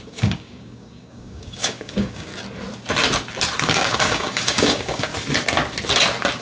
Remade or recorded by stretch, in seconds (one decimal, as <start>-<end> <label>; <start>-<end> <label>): 0.0-2.3 remade; 2.3-3.6 recorded; 3.6-5.1 remade; 5.1-6.4 recorded